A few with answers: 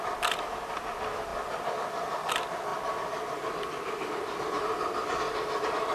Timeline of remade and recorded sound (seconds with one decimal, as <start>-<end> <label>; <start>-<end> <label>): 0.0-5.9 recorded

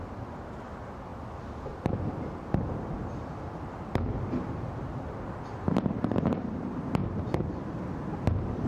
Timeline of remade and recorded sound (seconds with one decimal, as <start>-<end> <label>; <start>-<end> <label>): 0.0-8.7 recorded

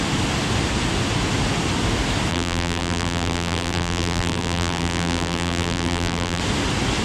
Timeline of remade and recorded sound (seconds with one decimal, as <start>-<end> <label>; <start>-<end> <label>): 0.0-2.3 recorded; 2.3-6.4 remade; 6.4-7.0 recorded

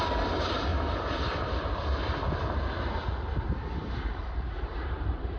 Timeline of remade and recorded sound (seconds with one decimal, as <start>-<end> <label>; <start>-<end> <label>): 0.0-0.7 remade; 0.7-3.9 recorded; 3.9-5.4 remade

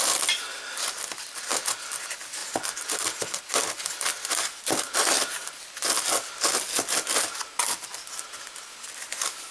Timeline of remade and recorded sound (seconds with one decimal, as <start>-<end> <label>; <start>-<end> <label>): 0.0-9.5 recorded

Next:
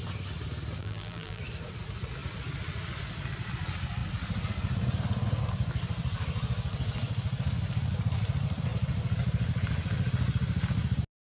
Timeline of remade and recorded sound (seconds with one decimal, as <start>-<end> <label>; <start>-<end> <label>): 0.0-0.8 recorded; 0.8-1.4 remade; 1.4-11.3 recorded

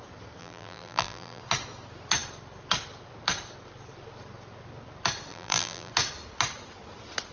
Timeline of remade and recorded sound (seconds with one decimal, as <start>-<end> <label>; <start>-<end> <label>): 0.0-0.4 recorded; 0.4-1.4 remade; 1.4-5.3 recorded; 5.3-5.9 remade; 5.9-7.3 recorded